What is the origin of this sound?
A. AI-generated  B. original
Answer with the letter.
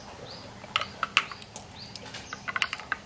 B